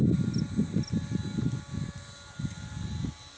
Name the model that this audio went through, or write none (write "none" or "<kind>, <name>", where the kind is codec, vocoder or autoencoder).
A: none